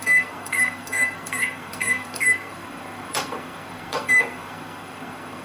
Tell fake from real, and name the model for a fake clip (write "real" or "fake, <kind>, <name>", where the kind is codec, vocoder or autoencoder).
fake, codec, SNAC